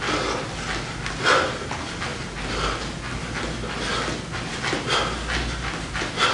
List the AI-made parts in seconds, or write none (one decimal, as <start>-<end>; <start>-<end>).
none